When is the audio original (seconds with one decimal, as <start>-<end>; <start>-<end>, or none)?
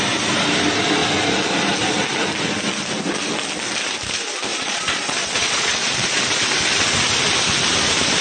0.0-4.5; 6.2-8.2